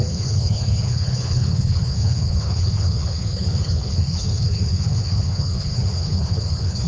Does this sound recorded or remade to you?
remade